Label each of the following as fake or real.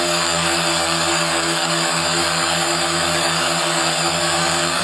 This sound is fake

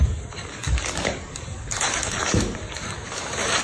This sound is fake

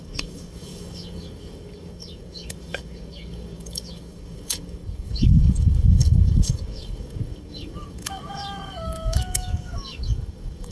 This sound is fake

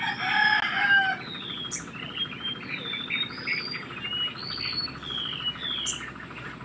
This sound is real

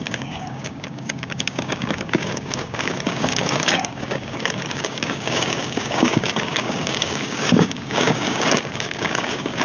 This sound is fake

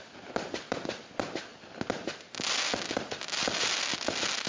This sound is real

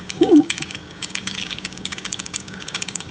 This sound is fake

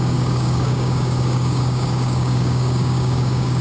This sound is fake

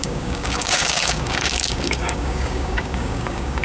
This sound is fake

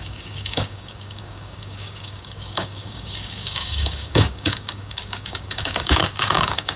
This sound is fake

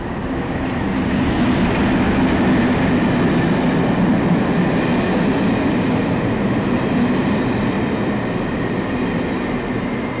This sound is real